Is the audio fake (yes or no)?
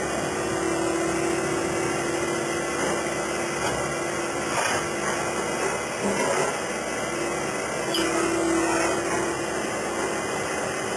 no